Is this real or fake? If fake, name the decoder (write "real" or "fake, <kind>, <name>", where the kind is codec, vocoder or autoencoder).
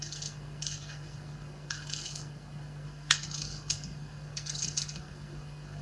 fake, codec, SNAC